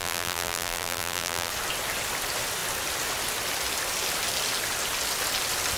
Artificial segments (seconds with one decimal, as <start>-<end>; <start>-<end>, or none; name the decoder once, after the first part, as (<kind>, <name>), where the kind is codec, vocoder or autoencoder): 0.0-1.5 (vocoder, BigVGAN v2)